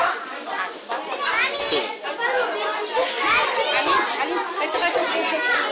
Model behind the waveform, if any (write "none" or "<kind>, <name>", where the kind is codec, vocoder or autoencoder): none